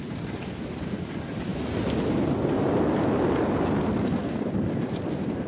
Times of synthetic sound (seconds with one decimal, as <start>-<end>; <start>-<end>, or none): 4.2-4.8